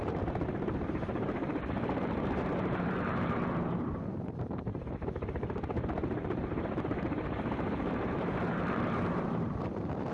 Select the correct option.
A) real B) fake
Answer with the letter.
B